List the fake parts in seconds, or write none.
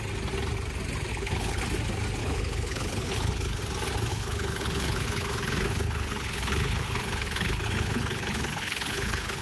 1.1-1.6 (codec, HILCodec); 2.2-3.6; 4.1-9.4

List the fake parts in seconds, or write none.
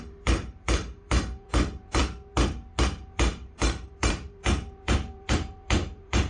0.0-2.0 (vocoder, BigVGAN v2); 3.0-6.3